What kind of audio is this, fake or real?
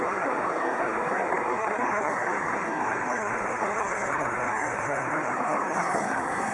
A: fake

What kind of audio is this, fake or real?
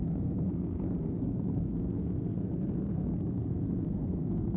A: fake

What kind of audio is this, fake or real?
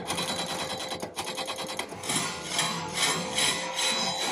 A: real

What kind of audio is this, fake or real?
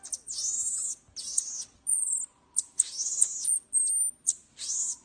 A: real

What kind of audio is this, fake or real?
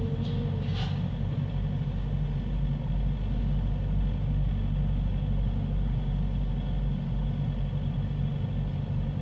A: real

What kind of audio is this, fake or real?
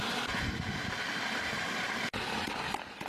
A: real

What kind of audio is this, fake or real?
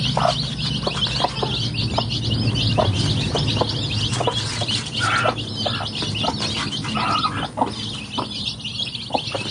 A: real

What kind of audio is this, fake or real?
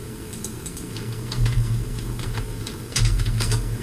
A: fake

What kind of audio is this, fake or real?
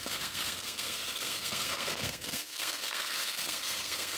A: fake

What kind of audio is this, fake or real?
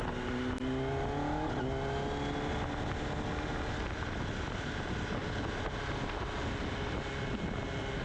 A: real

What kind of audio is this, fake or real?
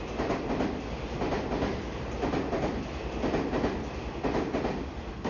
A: real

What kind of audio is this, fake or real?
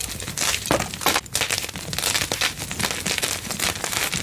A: real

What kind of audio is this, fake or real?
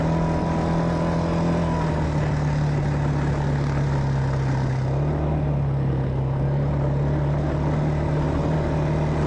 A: real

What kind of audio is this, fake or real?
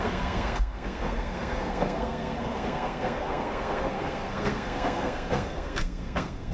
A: fake